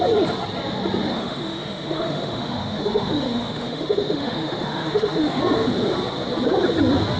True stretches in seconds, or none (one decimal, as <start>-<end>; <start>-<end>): 0.0-1.1; 5.4-7.2